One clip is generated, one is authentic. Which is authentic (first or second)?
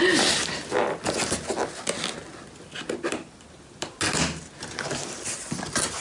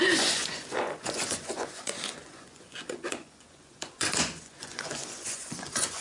first